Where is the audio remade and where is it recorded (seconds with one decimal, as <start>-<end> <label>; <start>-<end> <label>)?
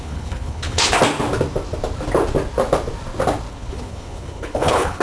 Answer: 0.0-1.0 remade; 1.0-3.5 recorded; 3.5-5.0 remade